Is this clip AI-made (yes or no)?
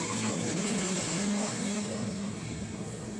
yes